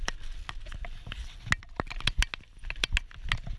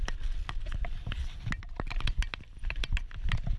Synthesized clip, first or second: second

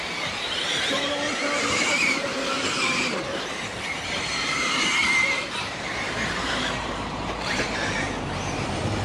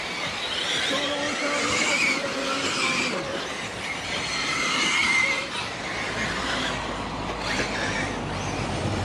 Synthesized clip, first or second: first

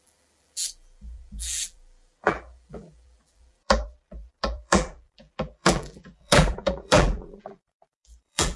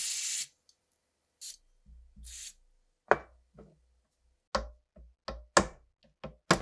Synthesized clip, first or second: first